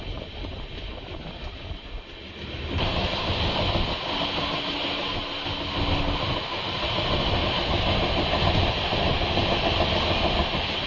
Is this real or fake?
real